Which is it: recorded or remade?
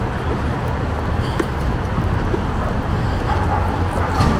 recorded